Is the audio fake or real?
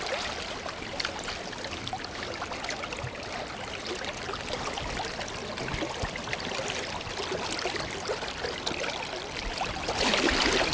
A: real